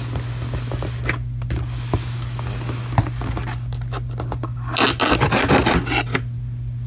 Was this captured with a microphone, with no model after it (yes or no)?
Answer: yes